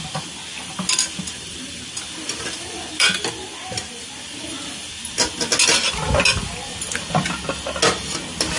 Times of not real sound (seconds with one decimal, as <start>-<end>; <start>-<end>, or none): none